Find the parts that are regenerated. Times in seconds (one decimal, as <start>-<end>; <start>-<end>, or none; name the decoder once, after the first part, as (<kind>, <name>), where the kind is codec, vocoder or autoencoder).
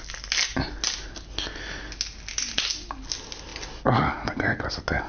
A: none